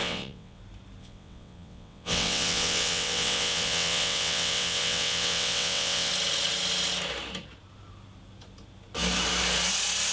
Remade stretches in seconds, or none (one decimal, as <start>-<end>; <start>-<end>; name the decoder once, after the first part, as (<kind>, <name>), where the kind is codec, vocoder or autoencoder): 0.0-0.6 (vocoder, WaveNeXt); 1.0-6.1